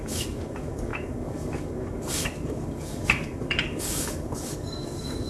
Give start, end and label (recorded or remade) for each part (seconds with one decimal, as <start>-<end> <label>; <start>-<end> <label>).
0.0-5.3 remade